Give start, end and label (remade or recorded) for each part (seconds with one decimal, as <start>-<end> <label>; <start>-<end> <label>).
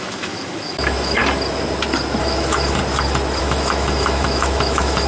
0.0-1.2 remade; 1.2-2.2 recorded; 2.2-2.8 remade; 2.8-3.4 recorded; 3.4-5.1 remade